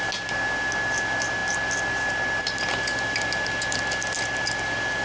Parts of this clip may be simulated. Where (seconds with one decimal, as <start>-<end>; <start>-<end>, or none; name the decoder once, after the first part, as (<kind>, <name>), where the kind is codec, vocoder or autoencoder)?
none